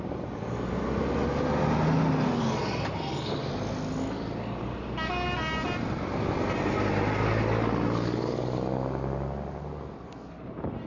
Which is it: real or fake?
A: real